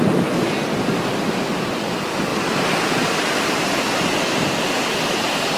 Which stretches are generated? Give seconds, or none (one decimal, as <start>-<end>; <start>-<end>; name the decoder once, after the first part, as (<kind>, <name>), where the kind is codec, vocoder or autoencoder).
none